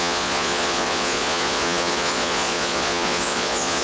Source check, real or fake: fake